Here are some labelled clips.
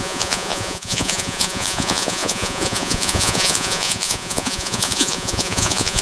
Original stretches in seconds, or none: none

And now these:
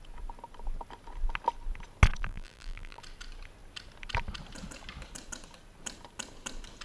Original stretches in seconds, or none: 0.0-2.2; 3.0-6.8

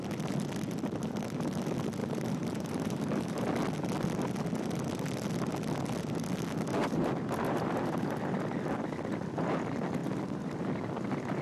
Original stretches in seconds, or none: 0.0-2.0; 3.5-6.8; 8.1-11.4

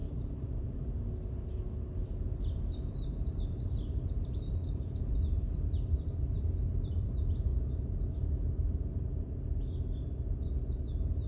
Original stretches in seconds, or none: 0.0-11.3

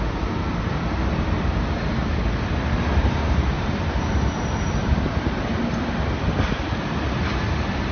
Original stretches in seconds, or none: 2.2-3.0; 5.5-7.5

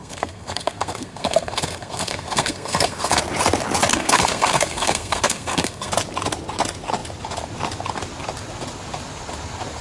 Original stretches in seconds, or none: 3.2-3.9; 5.9-9.8